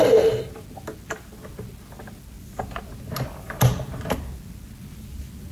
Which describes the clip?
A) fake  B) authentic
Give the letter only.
B